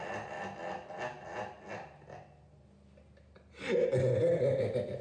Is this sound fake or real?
real